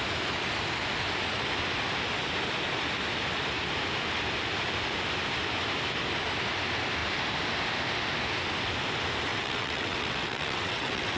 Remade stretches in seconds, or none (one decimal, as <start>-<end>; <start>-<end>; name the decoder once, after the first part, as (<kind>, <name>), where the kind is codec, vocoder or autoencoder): 9.3-11.2 (vocoder, WaveNeXt)

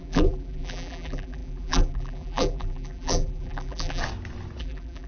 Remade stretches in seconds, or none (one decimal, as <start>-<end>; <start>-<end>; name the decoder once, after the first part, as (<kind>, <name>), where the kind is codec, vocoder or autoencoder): 0.0-4.0 (vocoder, BigVGAN v2); 4.6-5.1